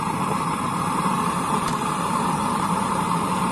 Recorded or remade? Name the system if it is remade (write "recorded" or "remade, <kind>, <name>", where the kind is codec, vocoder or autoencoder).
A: remade, vocoder, BigVGAN v2